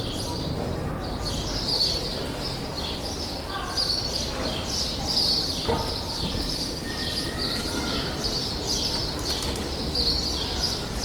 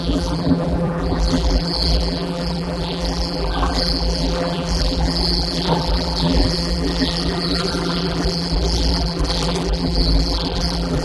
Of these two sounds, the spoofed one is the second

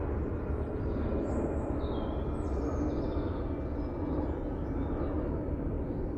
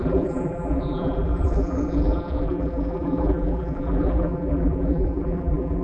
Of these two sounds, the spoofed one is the second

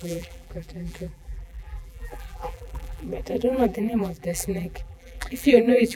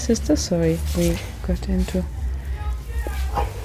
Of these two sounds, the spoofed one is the first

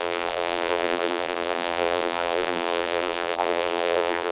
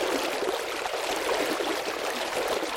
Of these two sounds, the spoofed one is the first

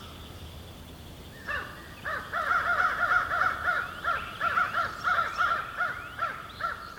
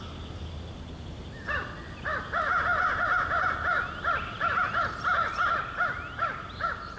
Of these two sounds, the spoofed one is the first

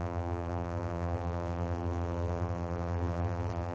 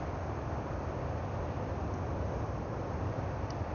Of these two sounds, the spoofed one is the first